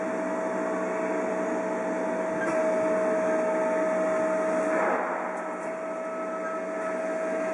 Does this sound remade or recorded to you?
recorded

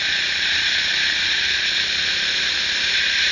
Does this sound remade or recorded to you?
recorded